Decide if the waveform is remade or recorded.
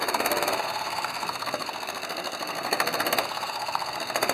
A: remade